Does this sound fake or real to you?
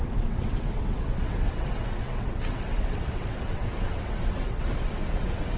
fake